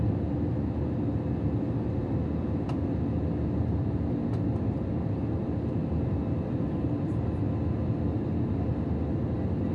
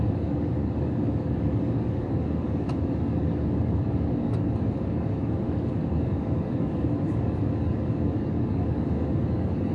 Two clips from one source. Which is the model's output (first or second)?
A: second